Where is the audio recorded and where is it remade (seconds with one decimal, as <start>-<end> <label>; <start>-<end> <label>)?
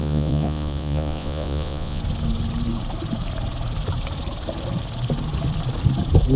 0.0-2.0 remade; 2.0-6.4 recorded